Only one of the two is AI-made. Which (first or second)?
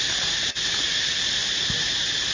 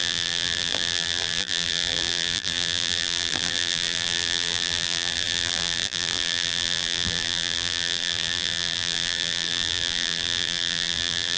second